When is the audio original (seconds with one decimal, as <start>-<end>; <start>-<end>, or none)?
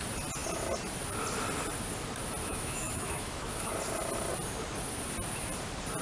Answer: 0.0-2.4; 3.7-6.0